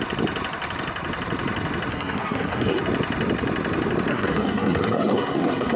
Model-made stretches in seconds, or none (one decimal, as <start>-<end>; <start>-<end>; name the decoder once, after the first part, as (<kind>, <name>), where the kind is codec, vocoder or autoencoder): 1.9-2.8 (codec, SNAC); 4.1-5.8

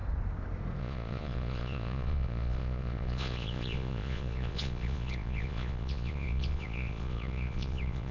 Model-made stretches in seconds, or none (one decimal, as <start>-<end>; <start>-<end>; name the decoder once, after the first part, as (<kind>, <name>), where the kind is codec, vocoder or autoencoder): 0.8-8.1 (vocoder, Vocos)

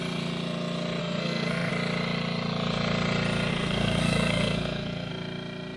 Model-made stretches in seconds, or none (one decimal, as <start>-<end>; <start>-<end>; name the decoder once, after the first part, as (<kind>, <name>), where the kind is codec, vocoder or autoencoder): 1.0-1.7 (codec, SNAC); 3.5-5.1

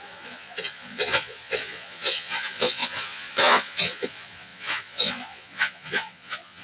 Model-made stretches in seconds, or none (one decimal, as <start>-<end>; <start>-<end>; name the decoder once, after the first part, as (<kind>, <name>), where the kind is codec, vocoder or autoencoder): 0.0-6.6 (vocoder, Vocos)

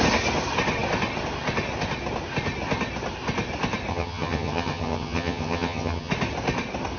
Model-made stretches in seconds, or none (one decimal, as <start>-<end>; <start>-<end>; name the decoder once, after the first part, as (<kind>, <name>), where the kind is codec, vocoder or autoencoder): 3.9-6.1 (vocoder, HiFi-GAN)

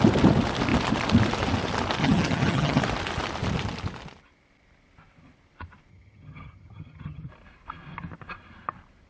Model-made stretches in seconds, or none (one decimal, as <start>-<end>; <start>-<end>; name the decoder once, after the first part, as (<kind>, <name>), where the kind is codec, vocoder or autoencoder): 2.0-2.8 (vocoder, HiFi-GAN); 5.9-7.3

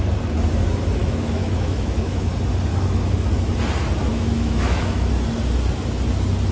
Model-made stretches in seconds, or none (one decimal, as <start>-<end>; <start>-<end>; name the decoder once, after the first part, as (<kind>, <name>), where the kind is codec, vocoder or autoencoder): 1.0-2.3 (autoencoder, DAC-VAE); 2.7-3.3; 4.1-5.1

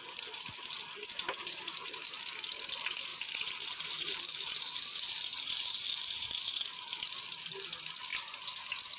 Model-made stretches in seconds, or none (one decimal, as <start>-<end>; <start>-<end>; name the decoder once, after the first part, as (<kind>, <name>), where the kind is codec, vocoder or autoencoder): 1.4-2.2 (vocoder, BigVGAN v2); 3.1-5.2